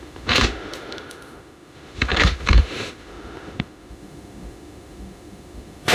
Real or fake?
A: fake